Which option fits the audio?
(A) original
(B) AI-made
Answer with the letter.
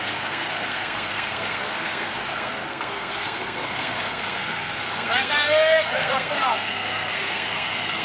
B